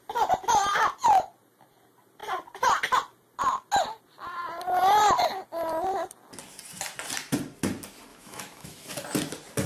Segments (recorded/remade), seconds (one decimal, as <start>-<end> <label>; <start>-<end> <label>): 0.0-8.1 recorded; 8.1-8.9 remade; 8.9-9.7 recorded